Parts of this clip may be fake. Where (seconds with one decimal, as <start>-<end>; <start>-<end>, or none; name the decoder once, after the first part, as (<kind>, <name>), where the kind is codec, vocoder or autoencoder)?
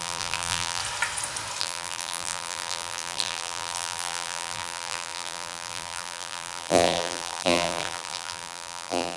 0.0-0.8 (vocoder, BigVGAN v2); 1.6-9.2